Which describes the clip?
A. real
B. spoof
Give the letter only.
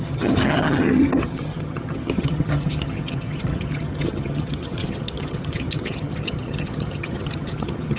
B